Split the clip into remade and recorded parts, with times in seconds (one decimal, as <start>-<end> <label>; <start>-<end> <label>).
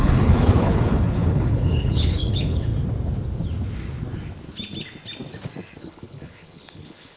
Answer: 0.0-2.7 remade; 2.7-5.8 recorded; 5.8-7.2 remade